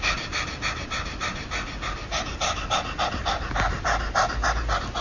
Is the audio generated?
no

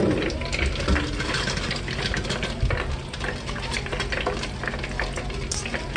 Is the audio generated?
no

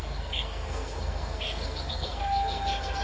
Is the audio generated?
yes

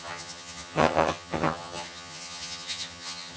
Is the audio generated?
yes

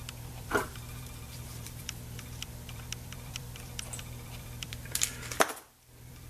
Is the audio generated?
yes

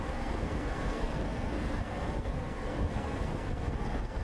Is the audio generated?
yes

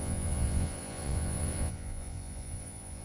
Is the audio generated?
yes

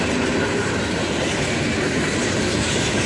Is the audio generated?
no